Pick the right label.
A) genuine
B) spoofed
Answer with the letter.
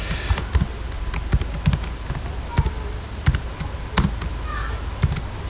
A